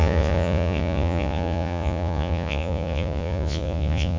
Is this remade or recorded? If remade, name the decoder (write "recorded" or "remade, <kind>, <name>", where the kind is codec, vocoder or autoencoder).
remade, vocoder, Vocos